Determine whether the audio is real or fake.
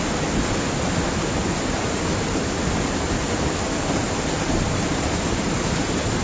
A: real